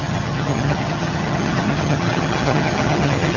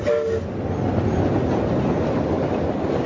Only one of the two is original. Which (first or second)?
second